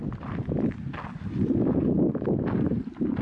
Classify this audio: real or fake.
real